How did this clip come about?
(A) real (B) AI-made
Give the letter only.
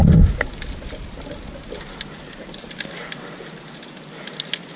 A